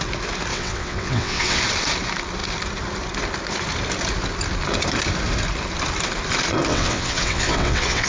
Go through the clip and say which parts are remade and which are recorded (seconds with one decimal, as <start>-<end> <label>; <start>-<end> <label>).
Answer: 0.0-0.5 recorded; 0.5-1.6 remade; 1.6-6.7 recorded; 6.7-8.1 remade